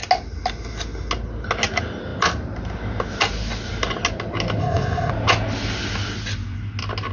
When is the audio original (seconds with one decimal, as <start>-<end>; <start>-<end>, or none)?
0.0-4.6; 5.1-7.1